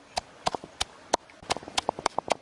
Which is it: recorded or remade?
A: recorded